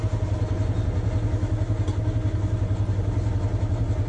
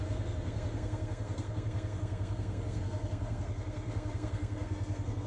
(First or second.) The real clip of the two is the first